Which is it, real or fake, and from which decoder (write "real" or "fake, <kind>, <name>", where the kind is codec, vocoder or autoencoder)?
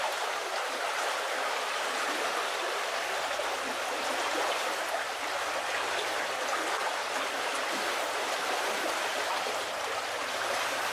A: real